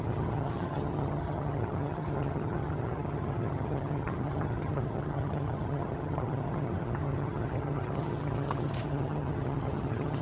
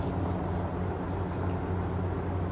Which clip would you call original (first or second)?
second